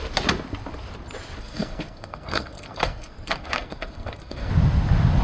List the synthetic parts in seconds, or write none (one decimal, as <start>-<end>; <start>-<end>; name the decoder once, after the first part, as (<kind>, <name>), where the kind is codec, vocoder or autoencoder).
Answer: 1.4-4.5 (codec, SNAC)

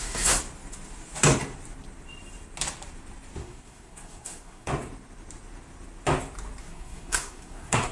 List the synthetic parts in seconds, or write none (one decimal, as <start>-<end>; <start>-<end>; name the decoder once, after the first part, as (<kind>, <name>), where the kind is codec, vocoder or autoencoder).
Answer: 0.0-0.4 (codec, SNAC); 3.4-4.7; 6.6-7.9

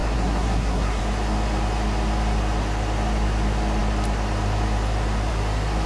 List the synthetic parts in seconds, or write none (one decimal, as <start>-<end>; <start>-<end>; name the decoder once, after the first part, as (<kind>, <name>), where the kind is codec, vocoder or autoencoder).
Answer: 0.0-1.0 (codec, SNAC)